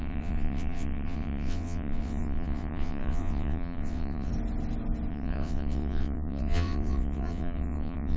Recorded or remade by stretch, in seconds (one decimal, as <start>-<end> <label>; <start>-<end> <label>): 0.0-4.3 remade; 4.3-5.1 recorded; 5.1-8.2 remade